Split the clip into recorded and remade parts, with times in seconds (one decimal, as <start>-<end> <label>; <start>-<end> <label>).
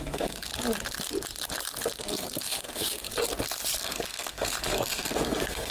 0.0-0.5 remade; 0.5-2.0 recorded; 2.0-3.1 remade; 3.1-3.8 recorded; 3.8-5.7 remade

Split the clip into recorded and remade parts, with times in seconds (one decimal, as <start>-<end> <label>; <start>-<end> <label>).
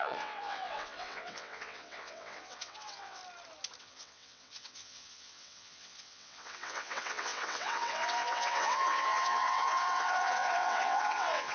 0.0-3.2 remade; 3.2-3.8 recorded; 3.8-11.5 remade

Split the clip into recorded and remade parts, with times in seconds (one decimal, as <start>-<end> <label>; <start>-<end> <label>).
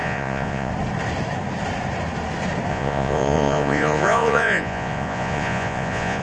0.0-0.7 remade; 0.7-2.7 recorded; 2.7-6.2 remade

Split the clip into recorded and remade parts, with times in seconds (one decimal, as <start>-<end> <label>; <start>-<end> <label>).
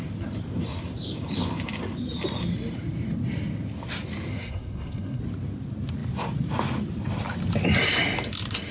0.0-4.3 recorded; 4.3-5.2 remade; 5.2-8.7 recorded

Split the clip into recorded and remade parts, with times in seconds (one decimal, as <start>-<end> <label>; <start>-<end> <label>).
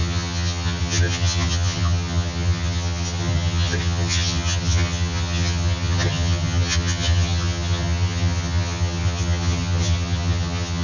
0.0-10.8 remade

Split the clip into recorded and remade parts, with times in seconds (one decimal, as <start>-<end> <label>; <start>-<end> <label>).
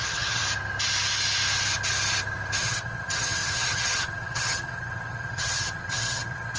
0.0-0.4 remade; 0.4-2.6 recorded; 2.6-6.6 remade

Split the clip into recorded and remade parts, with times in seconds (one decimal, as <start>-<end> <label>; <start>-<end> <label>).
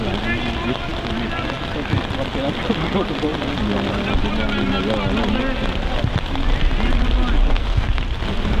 0.0-7.4 recorded; 7.4-8.0 remade; 8.0-8.6 recorded